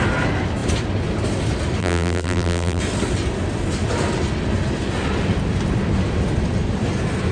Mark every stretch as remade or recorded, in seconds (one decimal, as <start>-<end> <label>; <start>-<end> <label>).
0.0-1.8 recorded; 1.8-2.8 remade; 2.8-7.3 recorded